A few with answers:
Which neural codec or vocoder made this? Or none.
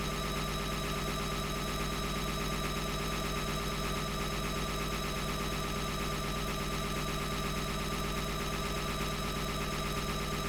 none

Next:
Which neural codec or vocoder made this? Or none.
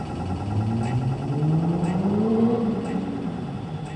none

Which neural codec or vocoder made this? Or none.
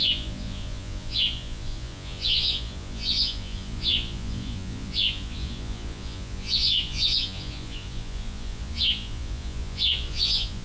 vocoder, Vocos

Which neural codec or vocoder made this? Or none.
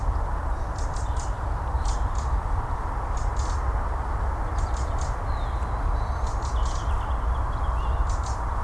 none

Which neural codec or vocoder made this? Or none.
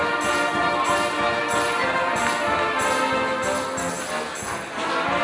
none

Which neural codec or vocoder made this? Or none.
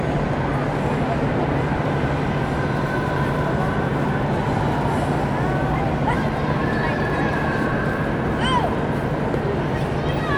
none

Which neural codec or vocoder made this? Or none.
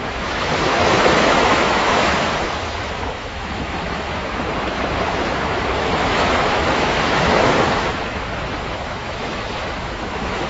autoencoder, DAC-VAE